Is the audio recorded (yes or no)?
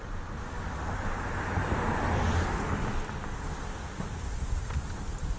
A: yes